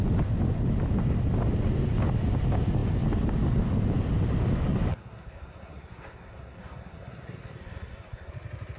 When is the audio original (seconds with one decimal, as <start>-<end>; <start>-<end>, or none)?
0.0-4.9; 8.3-8.8